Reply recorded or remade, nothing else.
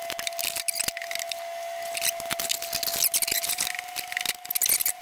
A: recorded